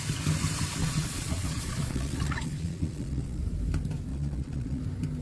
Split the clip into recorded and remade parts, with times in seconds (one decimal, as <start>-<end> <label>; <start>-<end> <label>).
0.0-0.8 recorded; 0.8-3.4 remade; 3.4-4.1 recorded; 4.1-4.8 remade; 4.8-5.2 recorded